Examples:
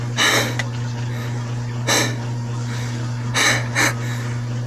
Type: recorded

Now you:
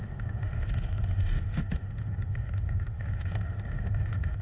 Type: remade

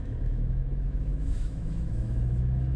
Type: remade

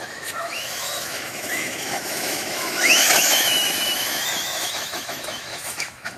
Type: remade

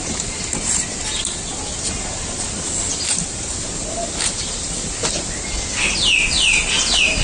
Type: recorded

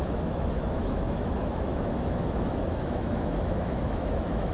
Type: remade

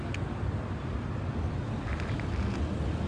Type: recorded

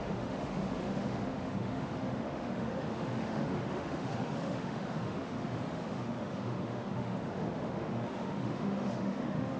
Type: remade